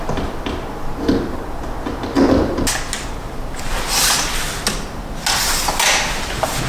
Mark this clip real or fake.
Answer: real